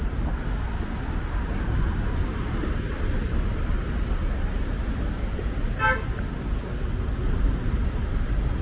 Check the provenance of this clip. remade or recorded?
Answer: recorded